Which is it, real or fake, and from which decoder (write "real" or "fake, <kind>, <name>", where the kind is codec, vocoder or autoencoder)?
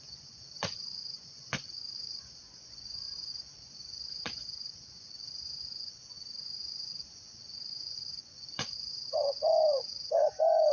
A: fake, vocoder, Vocos